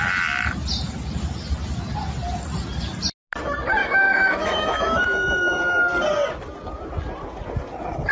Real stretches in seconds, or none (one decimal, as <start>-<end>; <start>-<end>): 0.0-3.8; 5.6-8.1